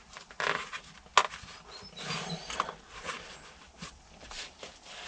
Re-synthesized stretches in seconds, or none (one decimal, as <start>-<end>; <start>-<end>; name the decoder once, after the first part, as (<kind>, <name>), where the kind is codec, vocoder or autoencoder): none